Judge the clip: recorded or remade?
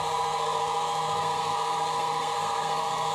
remade